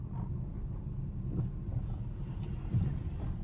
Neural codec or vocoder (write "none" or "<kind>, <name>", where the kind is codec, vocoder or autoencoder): none